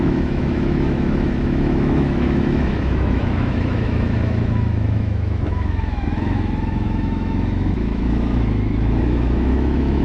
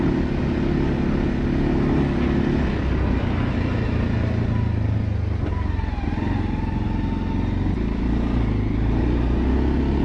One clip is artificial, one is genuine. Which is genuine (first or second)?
second